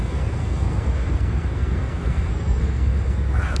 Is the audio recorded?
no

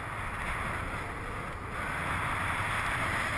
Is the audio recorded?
yes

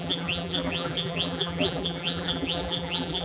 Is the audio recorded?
no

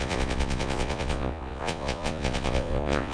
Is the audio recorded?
no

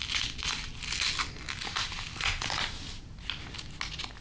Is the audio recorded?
yes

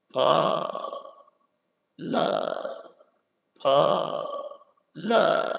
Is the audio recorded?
no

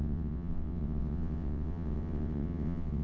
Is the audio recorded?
no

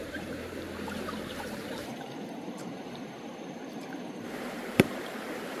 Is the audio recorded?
no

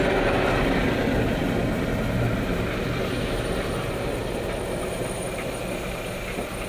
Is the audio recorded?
yes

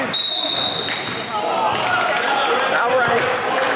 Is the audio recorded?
yes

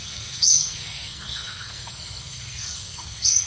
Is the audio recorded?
no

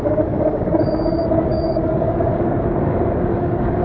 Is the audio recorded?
no